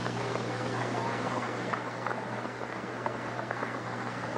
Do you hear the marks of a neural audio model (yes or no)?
yes